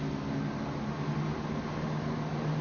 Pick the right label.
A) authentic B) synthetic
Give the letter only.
A